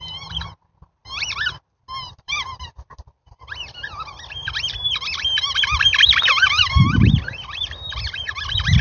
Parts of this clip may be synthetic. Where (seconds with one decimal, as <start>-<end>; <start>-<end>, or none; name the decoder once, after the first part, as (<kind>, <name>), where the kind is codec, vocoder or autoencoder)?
0.0-1.0 (vocoder, BigVGAN v2); 2.1-8.8

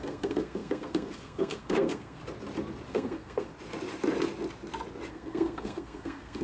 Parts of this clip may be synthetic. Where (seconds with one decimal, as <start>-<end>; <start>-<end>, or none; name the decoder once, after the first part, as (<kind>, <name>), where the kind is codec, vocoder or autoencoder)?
0.0-2.2 (codec, SNAC); 2.9-3.5; 5.1-6.4

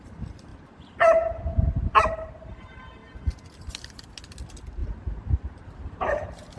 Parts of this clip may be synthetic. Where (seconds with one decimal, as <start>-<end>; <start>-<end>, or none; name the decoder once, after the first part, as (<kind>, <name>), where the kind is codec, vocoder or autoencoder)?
none

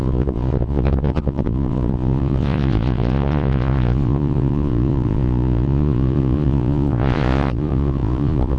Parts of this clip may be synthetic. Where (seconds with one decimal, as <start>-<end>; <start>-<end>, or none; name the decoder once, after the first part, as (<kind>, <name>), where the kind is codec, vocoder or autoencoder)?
0.0-8.6 (vocoder, Vocos)

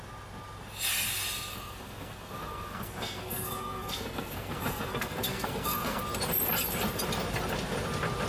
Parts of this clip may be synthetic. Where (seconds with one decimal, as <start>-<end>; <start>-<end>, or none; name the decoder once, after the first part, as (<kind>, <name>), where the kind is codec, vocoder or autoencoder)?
1.5-6.0 (codec, SNAC)